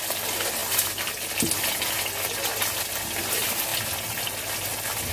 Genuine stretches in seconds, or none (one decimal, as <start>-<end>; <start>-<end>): 0.0-5.1